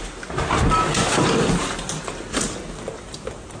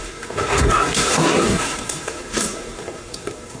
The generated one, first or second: second